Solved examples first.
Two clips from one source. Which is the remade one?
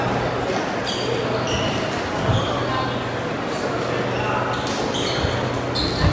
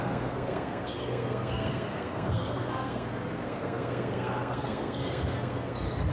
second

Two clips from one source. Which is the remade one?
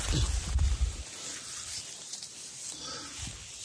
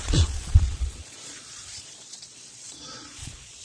second